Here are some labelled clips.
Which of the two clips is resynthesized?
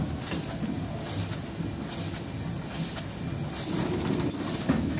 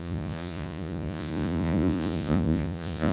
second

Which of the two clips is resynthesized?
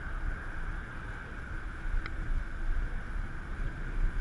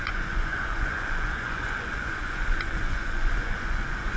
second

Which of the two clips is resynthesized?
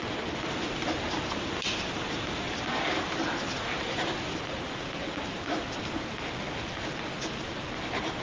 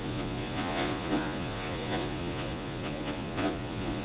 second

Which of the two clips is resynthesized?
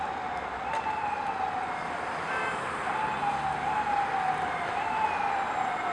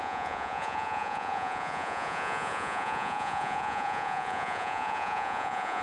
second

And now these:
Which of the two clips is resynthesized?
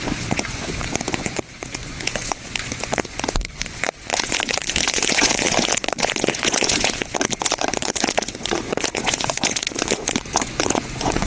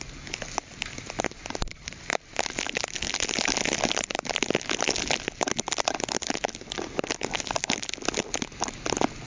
first